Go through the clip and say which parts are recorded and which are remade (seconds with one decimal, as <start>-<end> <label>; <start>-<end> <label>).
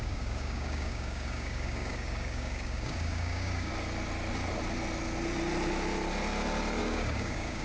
0.0-3.7 remade; 3.7-6.8 recorded; 6.8-7.6 remade